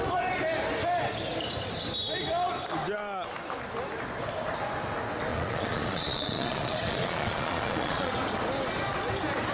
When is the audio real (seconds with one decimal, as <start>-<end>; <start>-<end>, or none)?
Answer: 0.0-5.3; 8.1-9.5